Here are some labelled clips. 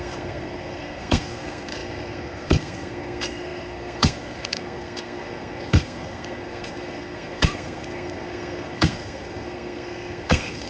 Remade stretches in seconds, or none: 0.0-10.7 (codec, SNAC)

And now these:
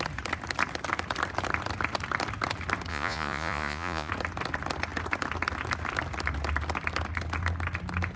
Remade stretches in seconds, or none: 2.9-4.1 (vocoder, Vocos)